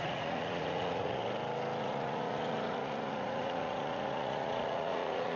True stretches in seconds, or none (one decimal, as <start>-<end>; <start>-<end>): 1.2-1.8